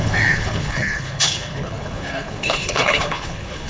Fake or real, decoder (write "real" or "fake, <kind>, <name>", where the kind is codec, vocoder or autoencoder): fake, codec, HILCodec